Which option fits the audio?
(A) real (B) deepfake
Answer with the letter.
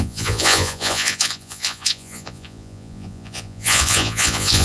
B